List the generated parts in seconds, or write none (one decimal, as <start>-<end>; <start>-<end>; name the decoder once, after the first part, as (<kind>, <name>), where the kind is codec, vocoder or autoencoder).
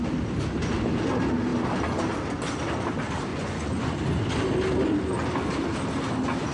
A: 3.3-4.0 (vocoder, Vocos)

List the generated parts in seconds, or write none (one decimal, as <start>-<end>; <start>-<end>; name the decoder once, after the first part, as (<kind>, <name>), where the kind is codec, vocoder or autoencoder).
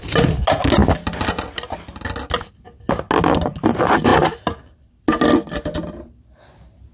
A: none